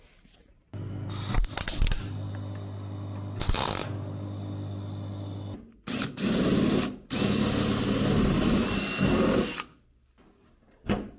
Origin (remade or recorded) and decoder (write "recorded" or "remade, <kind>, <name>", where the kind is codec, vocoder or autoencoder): recorded